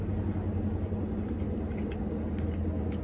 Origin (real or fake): real